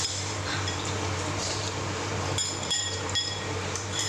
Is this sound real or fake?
fake